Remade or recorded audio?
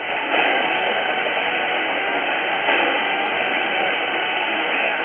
remade